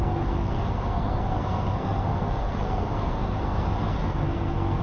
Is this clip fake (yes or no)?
yes